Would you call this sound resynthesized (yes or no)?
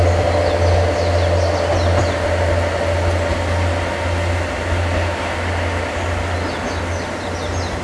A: no